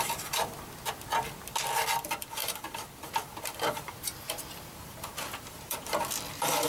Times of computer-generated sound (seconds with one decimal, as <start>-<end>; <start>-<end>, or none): 0.0-6.7